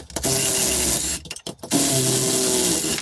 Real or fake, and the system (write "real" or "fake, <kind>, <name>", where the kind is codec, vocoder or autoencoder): real